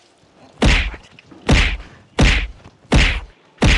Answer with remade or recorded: remade